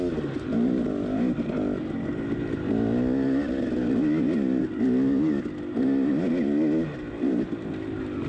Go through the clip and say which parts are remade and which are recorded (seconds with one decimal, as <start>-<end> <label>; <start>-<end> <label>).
0.0-8.3 recorded